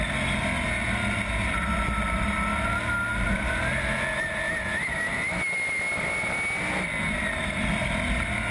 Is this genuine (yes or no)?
yes